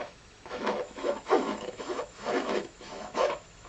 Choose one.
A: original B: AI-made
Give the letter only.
B